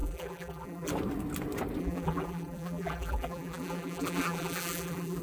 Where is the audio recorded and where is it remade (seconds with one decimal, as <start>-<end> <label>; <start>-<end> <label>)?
0.0-0.9 remade; 0.9-1.8 recorded; 1.8-5.2 remade